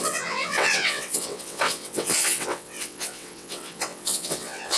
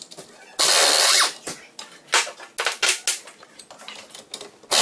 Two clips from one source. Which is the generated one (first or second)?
first